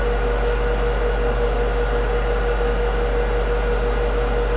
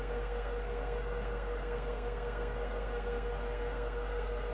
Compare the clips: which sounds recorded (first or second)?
first